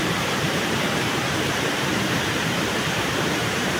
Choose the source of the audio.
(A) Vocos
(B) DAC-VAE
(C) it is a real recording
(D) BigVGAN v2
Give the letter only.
D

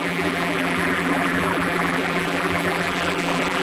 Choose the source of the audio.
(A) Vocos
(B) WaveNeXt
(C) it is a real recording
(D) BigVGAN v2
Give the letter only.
D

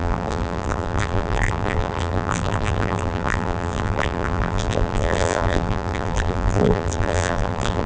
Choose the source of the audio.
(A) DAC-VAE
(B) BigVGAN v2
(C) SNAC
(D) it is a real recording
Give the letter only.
B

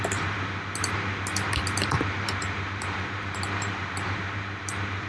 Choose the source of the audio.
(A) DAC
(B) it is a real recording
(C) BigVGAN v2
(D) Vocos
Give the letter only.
C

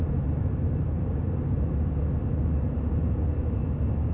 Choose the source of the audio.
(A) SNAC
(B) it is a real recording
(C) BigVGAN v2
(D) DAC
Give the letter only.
C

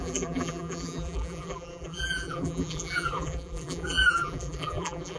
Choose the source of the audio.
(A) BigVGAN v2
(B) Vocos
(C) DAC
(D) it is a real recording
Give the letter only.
A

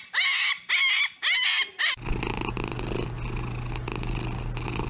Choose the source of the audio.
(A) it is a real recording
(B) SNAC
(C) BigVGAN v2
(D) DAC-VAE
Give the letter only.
A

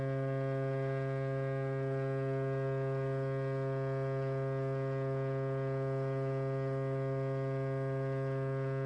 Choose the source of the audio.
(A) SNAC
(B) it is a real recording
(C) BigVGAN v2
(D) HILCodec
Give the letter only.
B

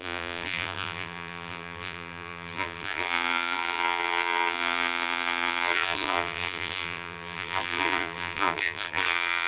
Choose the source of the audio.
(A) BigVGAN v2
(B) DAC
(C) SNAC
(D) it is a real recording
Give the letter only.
A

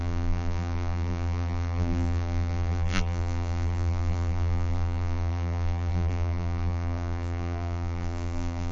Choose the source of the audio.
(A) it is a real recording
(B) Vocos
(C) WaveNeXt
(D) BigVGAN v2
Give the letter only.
D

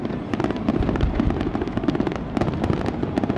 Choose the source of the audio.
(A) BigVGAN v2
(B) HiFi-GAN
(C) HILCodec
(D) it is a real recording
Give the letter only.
D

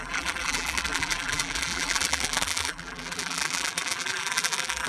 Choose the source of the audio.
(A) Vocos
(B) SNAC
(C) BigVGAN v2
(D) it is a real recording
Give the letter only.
C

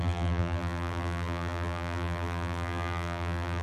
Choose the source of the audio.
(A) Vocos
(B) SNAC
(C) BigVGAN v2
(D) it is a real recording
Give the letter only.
C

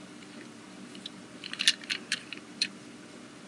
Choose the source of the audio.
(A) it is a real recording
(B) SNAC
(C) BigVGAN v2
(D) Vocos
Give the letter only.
C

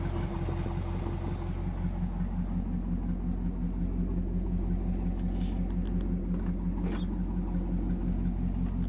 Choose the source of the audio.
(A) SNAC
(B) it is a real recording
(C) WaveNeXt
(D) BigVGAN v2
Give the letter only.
B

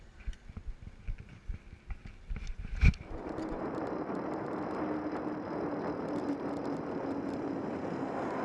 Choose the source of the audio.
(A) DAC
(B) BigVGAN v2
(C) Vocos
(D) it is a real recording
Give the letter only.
D